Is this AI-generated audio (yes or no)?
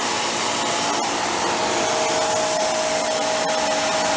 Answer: no